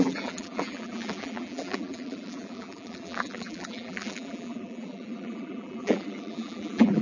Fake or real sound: fake